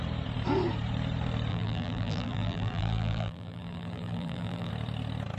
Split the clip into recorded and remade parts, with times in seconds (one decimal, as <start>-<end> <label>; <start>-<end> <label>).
0.0-1.5 recorded; 1.5-4.7 remade; 4.7-5.4 recorded